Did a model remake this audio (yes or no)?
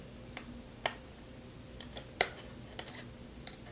no